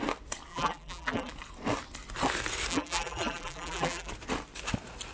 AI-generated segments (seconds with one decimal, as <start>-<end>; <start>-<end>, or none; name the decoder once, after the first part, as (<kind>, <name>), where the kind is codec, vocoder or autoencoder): 0.5-1.3 (vocoder, BigVGAN v2); 2.7-4.1